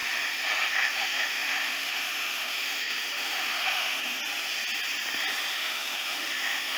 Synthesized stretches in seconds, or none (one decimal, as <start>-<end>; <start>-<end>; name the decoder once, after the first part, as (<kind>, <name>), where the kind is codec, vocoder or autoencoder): 0.7-4.2 (autoencoder, DAC-VAE); 5.5-6.8